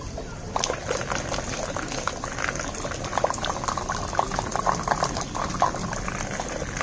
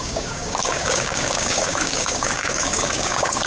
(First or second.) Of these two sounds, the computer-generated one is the second